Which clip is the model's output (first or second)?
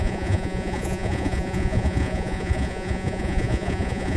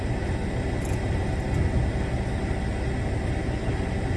first